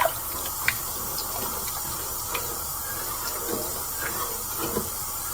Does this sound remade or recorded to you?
recorded